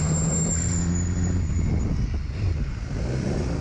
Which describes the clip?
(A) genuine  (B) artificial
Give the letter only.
A